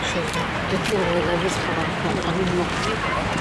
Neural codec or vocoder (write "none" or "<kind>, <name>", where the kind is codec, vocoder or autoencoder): vocoder, BigVGAN v2